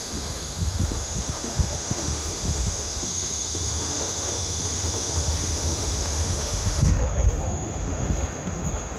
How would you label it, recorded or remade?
remade